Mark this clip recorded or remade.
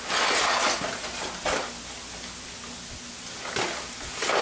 recorded